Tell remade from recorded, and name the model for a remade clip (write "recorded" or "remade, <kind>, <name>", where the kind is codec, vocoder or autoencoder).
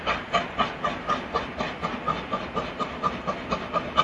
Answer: recorded